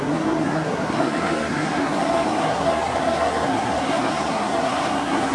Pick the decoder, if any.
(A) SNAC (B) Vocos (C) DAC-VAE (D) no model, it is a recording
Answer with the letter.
A